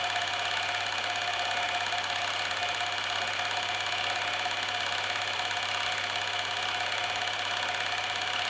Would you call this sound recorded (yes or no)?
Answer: yes